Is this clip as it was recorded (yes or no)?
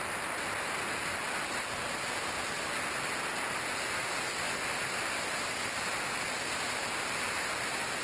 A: yes